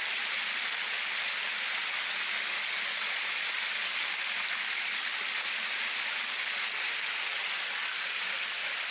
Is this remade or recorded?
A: recorded